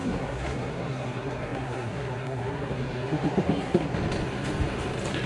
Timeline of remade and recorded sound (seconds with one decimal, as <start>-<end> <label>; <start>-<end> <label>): 0.0-3.9 remade; 3.9-5.3 recorded